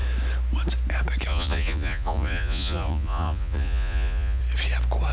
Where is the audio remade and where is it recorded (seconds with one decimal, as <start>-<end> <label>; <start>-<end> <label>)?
0.0-1.3 recorded; 1.3-4.4 remade; 4.4-5.1 recorded